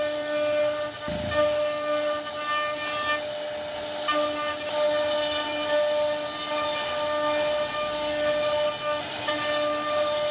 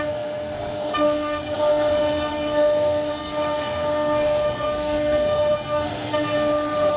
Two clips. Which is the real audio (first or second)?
first